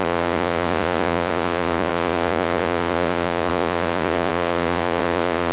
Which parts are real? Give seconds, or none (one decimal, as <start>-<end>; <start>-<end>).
none